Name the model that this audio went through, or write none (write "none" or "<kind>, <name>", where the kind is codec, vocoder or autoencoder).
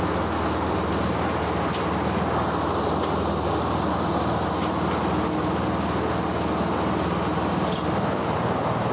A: none